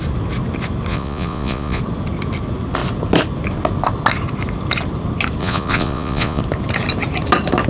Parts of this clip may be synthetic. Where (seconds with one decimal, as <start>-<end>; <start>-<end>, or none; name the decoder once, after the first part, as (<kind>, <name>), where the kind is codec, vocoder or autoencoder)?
0.9-1.8 (vocoder, Vocos); 5.4-6.4